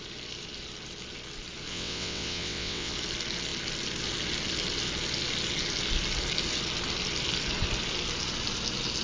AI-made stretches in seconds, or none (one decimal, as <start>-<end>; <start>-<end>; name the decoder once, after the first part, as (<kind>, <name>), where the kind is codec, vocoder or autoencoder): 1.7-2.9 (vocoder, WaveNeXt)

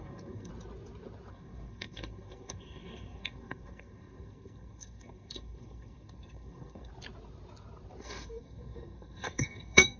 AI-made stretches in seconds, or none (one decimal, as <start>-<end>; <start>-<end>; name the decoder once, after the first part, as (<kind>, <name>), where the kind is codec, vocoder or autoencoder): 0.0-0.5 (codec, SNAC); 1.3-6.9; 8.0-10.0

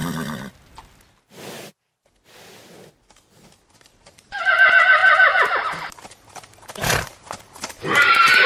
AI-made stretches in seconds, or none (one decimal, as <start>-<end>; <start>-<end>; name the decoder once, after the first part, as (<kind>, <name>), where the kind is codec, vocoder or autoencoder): 3.7-8.5 (vocoder, BigVGAN v2)

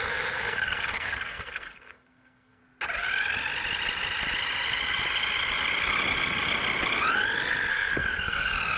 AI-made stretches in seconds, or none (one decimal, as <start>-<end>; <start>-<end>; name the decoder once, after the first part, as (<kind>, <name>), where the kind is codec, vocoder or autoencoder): 0.0-2.6 (codec, SNAC); 7.7-8.8